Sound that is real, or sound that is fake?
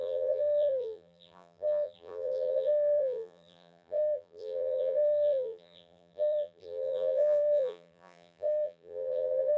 fake